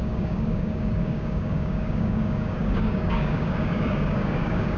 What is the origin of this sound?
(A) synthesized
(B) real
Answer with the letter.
A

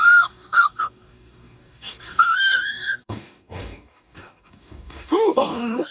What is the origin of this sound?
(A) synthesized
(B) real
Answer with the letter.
A